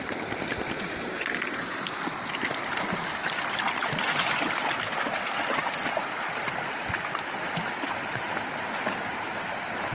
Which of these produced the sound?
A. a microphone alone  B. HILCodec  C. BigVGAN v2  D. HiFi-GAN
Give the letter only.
A